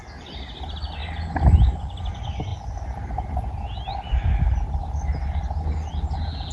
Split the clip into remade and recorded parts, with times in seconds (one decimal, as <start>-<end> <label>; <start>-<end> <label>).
0.0-2.5 recorded; 2.5-3.8 remade; 3.8-4.8 recorded; 4.8-5.4 remade; 5.4-6.5 recorded